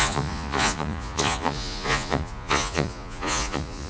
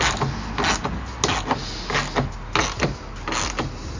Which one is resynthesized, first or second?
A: first